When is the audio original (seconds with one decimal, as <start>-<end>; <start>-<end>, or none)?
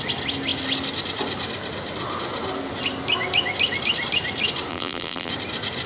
0.0-4.7; 5.3-5.9